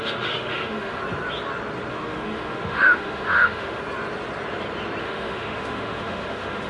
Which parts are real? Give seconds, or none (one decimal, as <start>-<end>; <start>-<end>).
1.0-1.9; 3.8-5.0